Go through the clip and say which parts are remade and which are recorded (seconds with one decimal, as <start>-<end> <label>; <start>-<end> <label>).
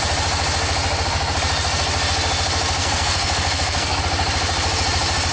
0.0-2.8 recorded; 2.8-4.0 remade; 4.0-5.3 recorded